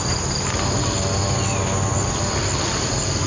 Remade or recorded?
recorded